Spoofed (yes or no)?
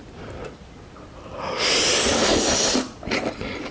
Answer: no